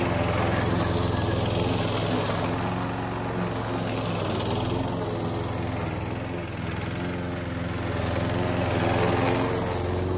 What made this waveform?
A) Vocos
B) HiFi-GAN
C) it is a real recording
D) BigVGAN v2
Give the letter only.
C